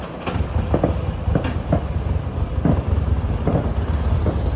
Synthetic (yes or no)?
no